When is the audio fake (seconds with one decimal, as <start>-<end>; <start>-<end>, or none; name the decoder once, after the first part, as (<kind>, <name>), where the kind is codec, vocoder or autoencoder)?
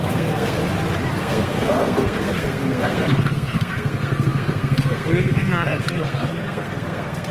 0.0-0.6 (codec, SNAC); 1.2-7.3